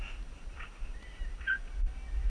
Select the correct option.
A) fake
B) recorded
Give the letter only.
B